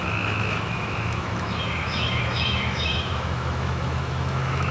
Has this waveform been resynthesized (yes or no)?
yes